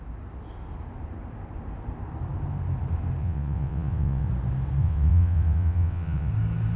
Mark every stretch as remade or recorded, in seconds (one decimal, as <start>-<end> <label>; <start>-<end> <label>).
0.0-3.2 recorded; 3.2-4.3 remade; 4.3-4.8 recorded; 4.8-6.3 remade; 6.3-6.8 recorded